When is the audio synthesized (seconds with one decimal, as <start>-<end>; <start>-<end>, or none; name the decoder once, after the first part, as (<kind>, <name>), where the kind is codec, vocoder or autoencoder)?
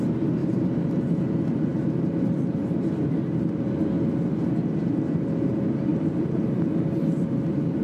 0.4-1.2 (vocoder, BigVGAN v2); 1.7-2.6; 5.9-6.4